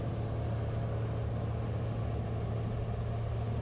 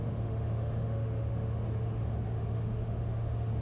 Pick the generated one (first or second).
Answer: second